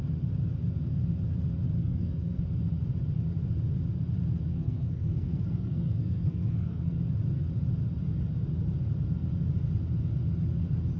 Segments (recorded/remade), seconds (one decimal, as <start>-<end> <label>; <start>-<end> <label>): 0.0-1.8 recorded; 1.8-2.4 remade; 2.4-4.5 recorded; 4.5-7.0 remade; 7.0-11.0 recorded